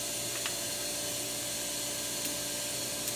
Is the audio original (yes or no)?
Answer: yes